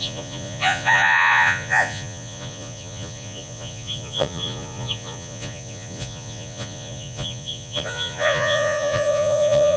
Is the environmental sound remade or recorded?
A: remade